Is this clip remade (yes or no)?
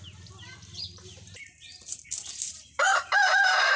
yes